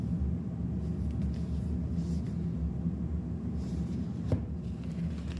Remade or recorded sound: recorded